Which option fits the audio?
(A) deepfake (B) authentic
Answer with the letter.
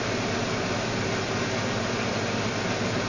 B